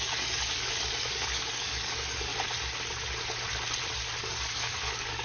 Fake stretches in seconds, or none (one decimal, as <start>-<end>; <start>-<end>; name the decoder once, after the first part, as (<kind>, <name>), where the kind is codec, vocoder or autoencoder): 0.0-2.3 (codec, DAC); 4.2-5.2